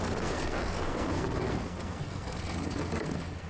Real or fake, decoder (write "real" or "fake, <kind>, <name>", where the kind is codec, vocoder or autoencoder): fake, codec, SNAC